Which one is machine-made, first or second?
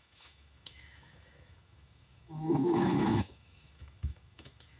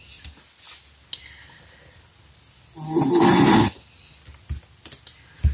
first